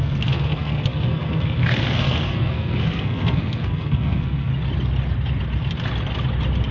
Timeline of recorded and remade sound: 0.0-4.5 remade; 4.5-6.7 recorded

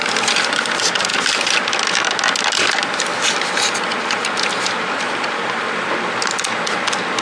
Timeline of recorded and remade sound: 0.0-7.2 recorded

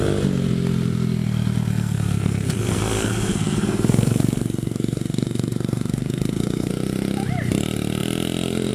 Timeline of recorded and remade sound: 0.0-1.7 recorded; 1.7-6.7 remade; 6.7-8.7 recorded

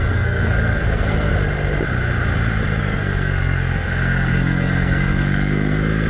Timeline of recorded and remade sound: 0.0-1.3 remade; 1.3-2.8 recorded; 2.8-6.1 remade

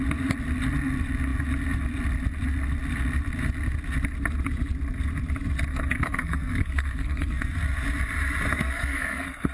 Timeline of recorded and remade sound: 0.0-5.7 recorded; 5.7-7.5 remade; 7.5-8.5 recorded; 8.5-9.5 remade